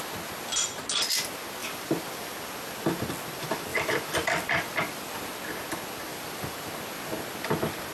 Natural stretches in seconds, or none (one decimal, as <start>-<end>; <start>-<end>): 0.0-1.6; 2.3-3.7; 5.3-6.1; 6.7-7.9